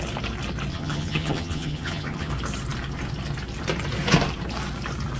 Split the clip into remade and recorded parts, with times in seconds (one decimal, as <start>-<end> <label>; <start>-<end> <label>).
0.0-0.7 recorded; 0.7-2.3 remade; 2.3-5.2 recorded